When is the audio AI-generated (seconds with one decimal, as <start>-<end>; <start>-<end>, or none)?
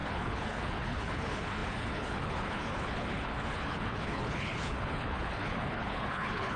0.0-6.6